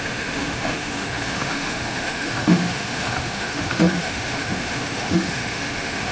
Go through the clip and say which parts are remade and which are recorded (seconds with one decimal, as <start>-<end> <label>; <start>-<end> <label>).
0.0-6.1 remade